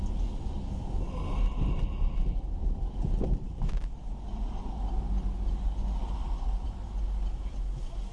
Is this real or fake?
real